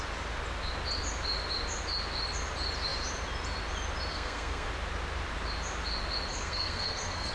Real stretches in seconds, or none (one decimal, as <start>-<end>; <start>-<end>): 0.0-4.1; 4.7-6.3